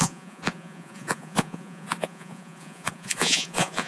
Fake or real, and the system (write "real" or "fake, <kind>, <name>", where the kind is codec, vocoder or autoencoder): fake, vocoder, Vocos